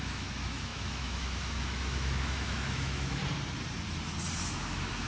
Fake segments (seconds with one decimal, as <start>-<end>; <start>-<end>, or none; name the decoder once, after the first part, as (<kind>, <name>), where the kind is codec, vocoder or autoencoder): 0.0-3.2 (autoencoder, DAC-VAE); 4.4-5.1